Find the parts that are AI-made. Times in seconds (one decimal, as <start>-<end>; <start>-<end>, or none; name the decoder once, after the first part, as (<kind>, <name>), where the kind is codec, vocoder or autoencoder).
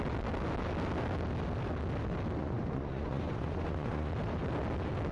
2.4-4.1 (vocoder, Vocos)